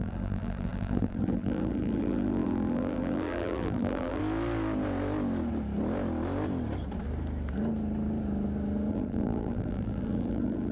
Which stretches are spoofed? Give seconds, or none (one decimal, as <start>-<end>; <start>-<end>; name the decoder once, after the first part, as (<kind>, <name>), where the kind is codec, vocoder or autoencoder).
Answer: 0.0-4.2 (vocoder, BigVGAN v2); 8.9-10.7